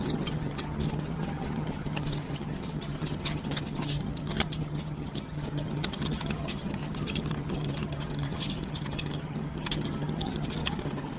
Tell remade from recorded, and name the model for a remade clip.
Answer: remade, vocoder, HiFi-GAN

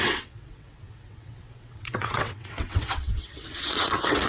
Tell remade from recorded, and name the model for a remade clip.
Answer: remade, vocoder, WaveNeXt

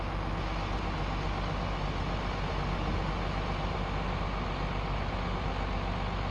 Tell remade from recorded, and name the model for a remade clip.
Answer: recorded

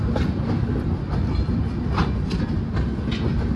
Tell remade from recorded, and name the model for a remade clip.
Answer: recorded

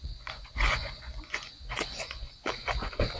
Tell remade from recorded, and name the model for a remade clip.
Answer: remade, vocoder, Vocos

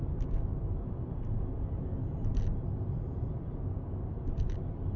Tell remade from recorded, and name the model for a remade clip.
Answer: recorded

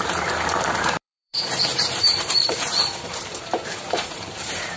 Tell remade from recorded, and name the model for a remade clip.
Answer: remade, vocoder, BigVGAN v2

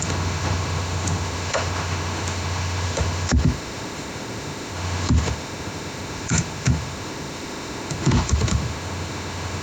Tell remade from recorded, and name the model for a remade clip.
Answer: remade, autoencoder, DAC-VAE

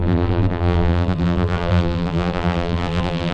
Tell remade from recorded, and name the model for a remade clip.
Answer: remade, vocoder, BigVGAN v2